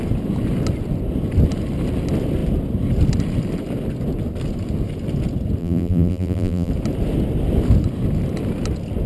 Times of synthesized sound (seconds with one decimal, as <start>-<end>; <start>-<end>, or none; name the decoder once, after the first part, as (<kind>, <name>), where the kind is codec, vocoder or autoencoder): 5.6-6.7 (vocoder, BigVGAN v2)